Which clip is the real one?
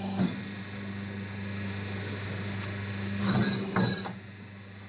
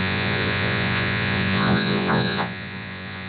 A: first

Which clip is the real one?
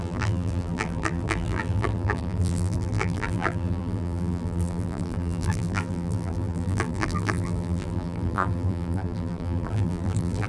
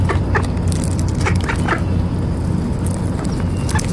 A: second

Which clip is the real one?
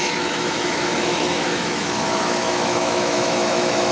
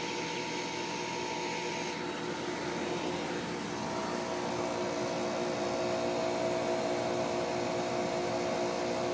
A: second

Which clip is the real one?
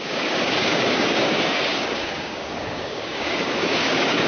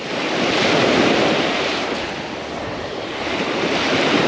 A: second